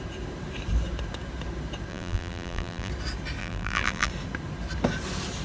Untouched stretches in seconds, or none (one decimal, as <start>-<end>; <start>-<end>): 0.0-1.9; 2.9-3.4; 4.1-5.4